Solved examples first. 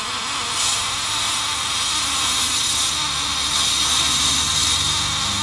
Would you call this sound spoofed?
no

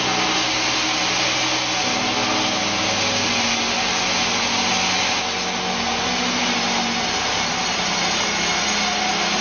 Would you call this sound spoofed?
no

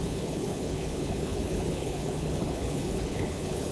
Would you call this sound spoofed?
yes